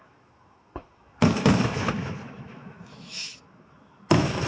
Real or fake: fake